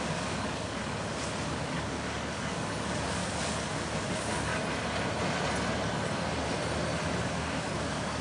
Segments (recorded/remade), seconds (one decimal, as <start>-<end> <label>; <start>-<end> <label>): 0.0-0.8 remade; 0.8-1.5 recorded; 1.5-3.2 remade; 3.2-3.8 recorded; 3.8-4.5 remade; 4.5-7.2 recorded; 7.2-8.2 remade